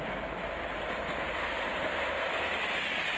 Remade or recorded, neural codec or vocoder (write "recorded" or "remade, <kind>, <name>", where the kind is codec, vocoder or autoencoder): recorded